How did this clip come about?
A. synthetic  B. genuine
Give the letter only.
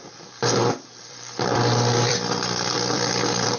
A